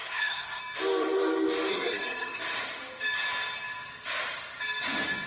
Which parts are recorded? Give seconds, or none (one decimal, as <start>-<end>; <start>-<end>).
0.6-1.7; 2.4-5.3